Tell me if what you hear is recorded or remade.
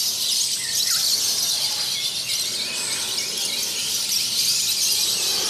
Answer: recorded